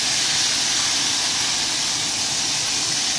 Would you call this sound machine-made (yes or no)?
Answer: no